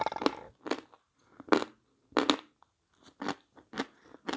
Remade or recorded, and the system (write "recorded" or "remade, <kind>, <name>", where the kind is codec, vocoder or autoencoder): recorded